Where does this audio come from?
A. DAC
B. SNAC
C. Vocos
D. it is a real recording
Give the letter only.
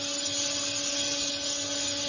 D